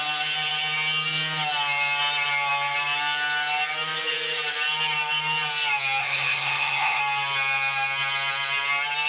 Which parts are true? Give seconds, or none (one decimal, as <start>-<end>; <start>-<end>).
0.0-6.0; 7.0-9.1